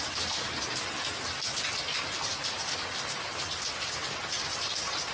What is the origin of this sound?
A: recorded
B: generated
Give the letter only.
A